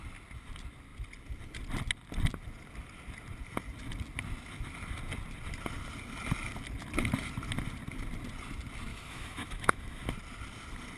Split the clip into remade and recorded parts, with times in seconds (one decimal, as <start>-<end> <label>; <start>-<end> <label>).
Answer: 0.0-8.9 recorded; 8.9-10.0 remade; 10.0-11.0 recorded